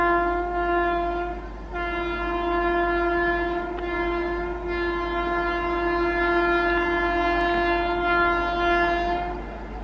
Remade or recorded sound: recorded